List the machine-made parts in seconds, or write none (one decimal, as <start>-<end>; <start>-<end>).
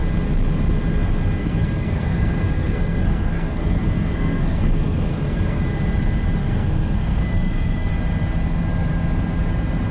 1.4-5.6; 6.4-7.9